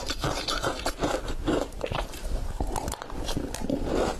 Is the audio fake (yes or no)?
yes